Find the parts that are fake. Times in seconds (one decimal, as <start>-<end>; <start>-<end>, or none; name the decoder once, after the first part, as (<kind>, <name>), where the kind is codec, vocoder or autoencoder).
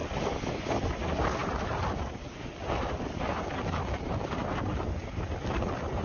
none